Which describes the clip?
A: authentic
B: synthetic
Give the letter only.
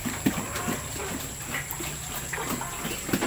A